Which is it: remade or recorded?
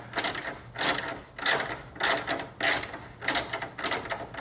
recorded